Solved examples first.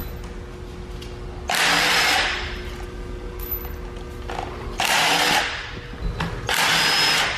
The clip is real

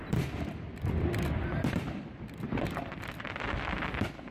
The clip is fake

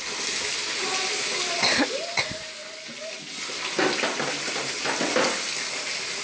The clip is real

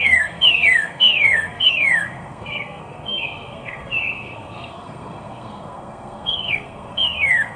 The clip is fake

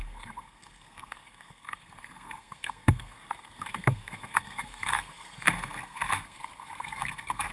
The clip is fake